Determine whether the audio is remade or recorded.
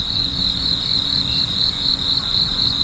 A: remade